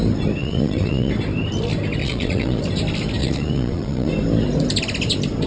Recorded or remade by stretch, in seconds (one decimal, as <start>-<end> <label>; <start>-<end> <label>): 0.0-0.4 recorded; 0.4-1.1 remade; 1.1-2.0 recorded; 2.0-2.6 remade; 2.6-3.2 recorded; 3.2-4.1 remade; 4.1-5.5 recorded